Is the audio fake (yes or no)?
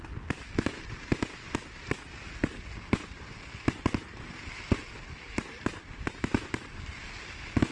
no